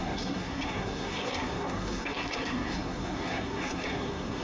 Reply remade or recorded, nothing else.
remade